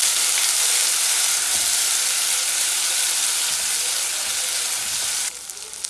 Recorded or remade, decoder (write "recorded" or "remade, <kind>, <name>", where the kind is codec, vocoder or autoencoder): recorded